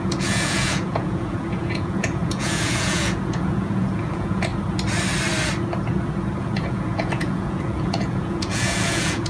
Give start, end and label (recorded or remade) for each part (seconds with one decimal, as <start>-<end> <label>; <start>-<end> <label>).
0.0-4.5 remade; 4.5-6.4 recorded; 6.4-9.3 remade